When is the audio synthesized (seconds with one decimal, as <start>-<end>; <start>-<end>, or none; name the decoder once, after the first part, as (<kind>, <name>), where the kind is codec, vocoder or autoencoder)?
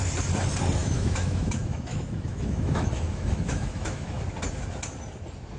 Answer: 0.8-4.2 (autoencoder, DAC-VAE)